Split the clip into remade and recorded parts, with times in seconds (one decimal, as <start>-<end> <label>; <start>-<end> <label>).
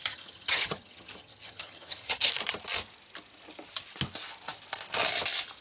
0.0-2.3 remade; 2.3-5.6 recorded